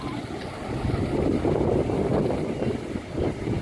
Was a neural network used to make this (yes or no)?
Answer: yes